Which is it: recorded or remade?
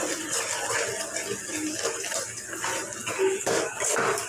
recorded